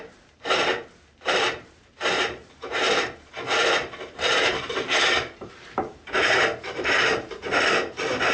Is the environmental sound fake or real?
fake